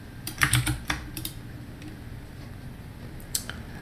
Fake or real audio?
fake